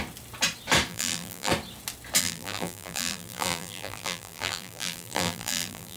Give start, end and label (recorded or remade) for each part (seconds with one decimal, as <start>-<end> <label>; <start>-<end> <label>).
0.0-0.9 recorded; 0.9-1.5 remade; 1.5-2.2 recorded; 2.2-6.0 remade

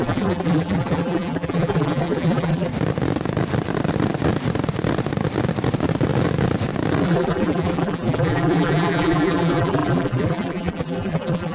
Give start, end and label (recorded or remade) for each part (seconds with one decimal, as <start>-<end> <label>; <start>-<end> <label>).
0.0-2.7 remade; 2.7-7.0 recorded; 7.0-11.5 remade

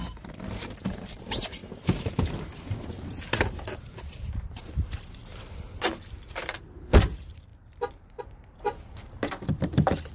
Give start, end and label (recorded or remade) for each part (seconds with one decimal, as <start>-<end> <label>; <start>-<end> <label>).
0.0-1.6 remade; 1.6-2.9 recorded; 2.9-5.2 remade; 5.2-6.4 recorded; 6.4-10.1 remade

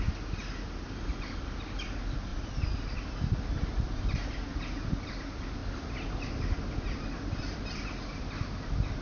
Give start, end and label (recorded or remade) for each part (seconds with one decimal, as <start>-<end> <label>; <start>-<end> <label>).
0.0-2.3 recorded; 2.3-3.0 remade; 3.0-9.0 recorded

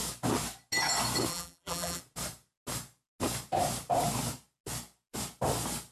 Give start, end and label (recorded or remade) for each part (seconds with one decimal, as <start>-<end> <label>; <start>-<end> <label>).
0.0-1.3 recorded; 1.3-2.0 remade; 2.0-5.9 recorded

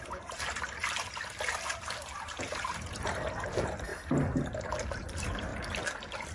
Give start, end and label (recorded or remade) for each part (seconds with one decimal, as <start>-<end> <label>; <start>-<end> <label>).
0.0-0.8 remade; 0.8-1.7 recorded; 1.7-3.9 remade; 3.9-4.6 recorded; 4.6-5.5 remade; 5.5-6.3 recorded

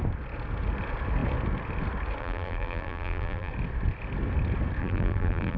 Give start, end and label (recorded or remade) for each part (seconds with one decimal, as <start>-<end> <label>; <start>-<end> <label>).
0.0-2.2 recorded; 2.2-3.5 remade; 3.5-4.8 recorded; 4.8-5.6 remade

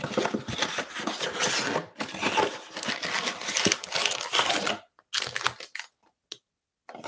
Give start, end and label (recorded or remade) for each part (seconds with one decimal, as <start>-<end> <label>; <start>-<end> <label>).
0.0-7.1 recorded